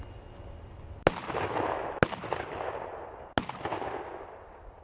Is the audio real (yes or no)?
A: yes